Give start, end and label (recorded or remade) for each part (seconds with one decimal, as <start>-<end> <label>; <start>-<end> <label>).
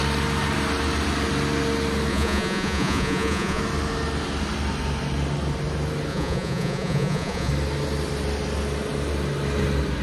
0.0-2.1 recorded; 2.1-3.6 remade; 3.6-6.1 recorded; 6.1-7.5 remade; 7.5-10.0 recorded